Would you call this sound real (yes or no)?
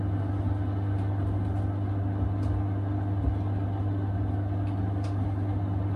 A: yes